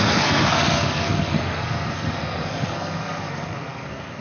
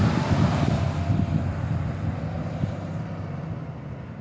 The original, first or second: second